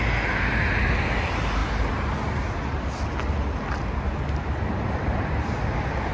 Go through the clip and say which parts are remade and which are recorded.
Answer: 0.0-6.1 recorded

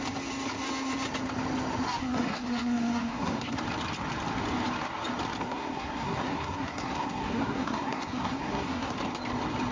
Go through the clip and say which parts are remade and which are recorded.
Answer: 0.0-2.0 recorded; 2.0-3.6 remade; 3.6-5.4 recorded; 5.4-8.9 remade; 8.9-9.7 recorded

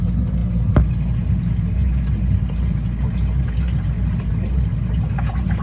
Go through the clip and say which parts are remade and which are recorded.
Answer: 0.0-5.6 recorded